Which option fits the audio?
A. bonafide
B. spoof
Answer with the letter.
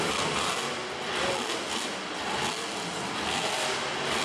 A